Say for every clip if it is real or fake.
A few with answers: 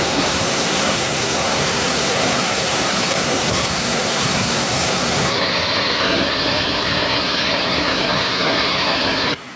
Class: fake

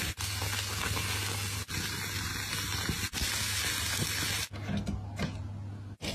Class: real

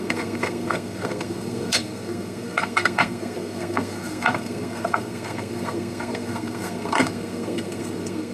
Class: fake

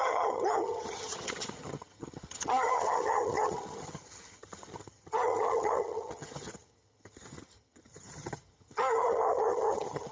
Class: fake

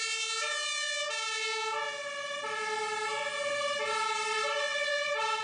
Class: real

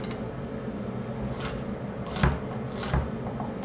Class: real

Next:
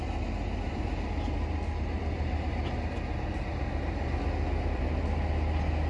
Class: real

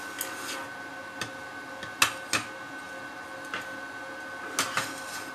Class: real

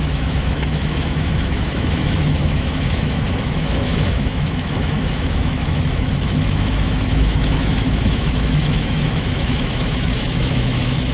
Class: fake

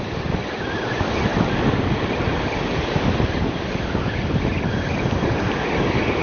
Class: real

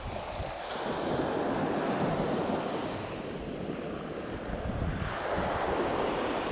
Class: real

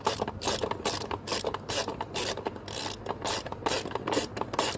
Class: fake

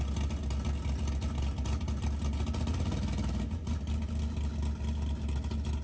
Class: real